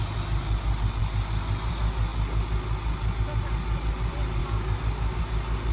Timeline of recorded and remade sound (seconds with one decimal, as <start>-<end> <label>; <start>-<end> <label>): 0.0-4.4 recorded; 4.4-5.2 remade; 5.2-5.7 recorded